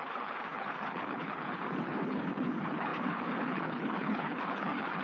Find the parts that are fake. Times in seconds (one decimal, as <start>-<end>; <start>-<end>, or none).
0.0-5.0